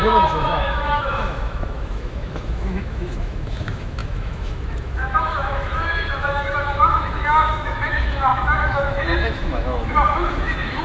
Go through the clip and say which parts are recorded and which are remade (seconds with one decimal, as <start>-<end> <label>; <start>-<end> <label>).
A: 0.0-10.8 remade

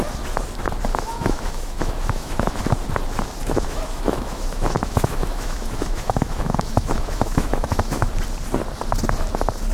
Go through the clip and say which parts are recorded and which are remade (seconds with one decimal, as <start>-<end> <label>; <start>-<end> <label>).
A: 0.0-0.9 recorded; 0.9-2.6 remade; 2.6-3.4 recorded; 3.4-8.1 remade; 8.1-9.7 recorded

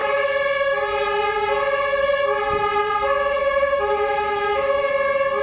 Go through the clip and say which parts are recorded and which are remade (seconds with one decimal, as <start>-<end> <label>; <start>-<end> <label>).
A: 0.0-3.4 recorded; 3.4-4.9 remade; 4.9-5.4 recorded

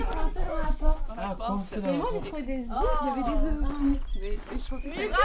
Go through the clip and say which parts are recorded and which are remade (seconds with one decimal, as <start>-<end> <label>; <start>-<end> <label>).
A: 0.0-0.5 recorded; 0.5-1.1 remade; 1.1-5.2 recorded

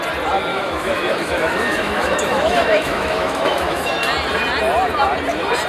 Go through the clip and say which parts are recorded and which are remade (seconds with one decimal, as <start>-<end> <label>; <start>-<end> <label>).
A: 0.0-0.5 recorded; 0.5-3.9 remade; 3.9-5.7 recorded

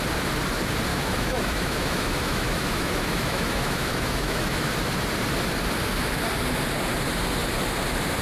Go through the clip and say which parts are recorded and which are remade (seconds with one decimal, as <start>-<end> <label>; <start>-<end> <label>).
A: 0.0-0.9 recorded; 0.9-4.7 remade; 4.7-8.2 recorded